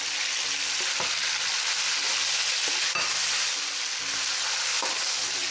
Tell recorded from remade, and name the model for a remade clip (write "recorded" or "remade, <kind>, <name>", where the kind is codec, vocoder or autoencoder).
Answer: recorded